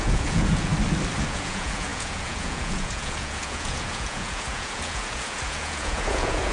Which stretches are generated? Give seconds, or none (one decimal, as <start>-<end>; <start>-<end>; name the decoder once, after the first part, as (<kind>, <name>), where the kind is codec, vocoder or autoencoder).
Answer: 0.0-0.7 (vocoder, Vocos); 1.2-6.5